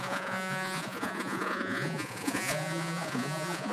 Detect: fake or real fake